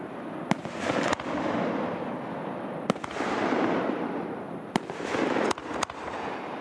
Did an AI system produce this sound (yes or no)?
no